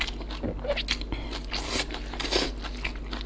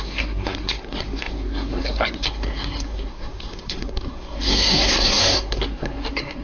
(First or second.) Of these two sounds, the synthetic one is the second